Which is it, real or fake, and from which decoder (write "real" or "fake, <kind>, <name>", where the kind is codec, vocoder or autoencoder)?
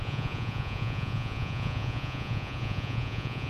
fake, vocoder, Vocos